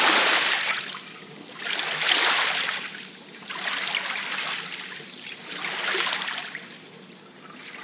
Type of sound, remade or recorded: recorded